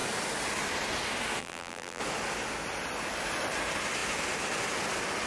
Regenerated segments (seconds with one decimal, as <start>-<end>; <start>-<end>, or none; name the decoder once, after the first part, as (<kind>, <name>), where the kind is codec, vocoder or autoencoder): 1.4-2.0 (vocoder, BigVGAN v2)